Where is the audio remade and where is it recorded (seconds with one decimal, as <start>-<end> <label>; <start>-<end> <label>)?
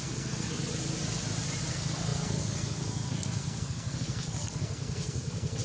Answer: 0.0-0.6 remade; 0.6-1.7 recorded; 1.7-5.6 remade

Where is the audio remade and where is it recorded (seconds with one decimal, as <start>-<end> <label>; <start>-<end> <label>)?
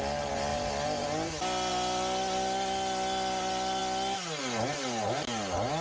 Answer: 0.0-5.8 recorded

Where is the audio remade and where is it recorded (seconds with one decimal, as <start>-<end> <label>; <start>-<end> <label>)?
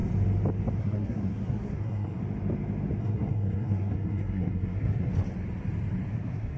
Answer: 0.0-0.8 recorded; 0.8-2.2 remade; 2.2-3.0 recorded; 3.0-5.1 remade; 5.1-6.1 recorded; 6.1-6.6 remade